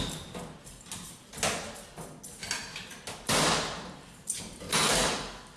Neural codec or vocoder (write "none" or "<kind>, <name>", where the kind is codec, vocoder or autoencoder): none